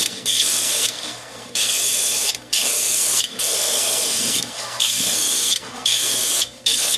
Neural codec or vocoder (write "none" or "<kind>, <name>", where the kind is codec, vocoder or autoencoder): codec, SNAC